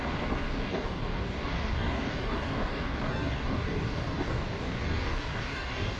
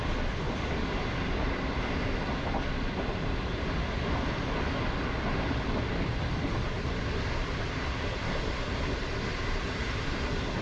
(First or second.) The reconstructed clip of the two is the first